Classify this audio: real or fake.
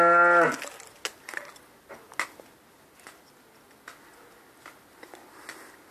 real